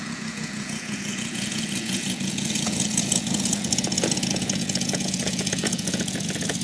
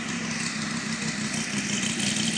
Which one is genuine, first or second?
second